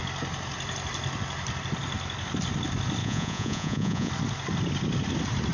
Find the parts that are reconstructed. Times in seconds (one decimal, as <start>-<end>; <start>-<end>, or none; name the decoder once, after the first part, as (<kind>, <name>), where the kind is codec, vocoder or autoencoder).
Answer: 3.0-4.1 (vocoder, Vocos)

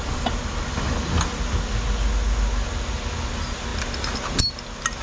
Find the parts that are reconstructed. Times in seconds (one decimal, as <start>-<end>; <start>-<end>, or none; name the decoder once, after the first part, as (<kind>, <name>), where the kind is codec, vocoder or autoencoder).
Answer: none

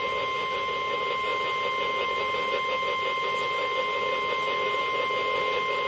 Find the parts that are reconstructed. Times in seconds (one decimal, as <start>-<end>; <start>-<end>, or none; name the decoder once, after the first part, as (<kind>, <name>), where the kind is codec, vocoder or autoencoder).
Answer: none

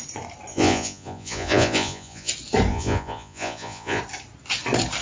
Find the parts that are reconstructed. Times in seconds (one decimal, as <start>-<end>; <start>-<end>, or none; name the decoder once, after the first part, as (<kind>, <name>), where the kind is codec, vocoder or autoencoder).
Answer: 0.5-2.3 (vocoder, Vocos); 2.7-4.0